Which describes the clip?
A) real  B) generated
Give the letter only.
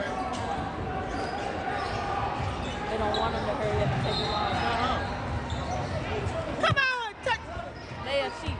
A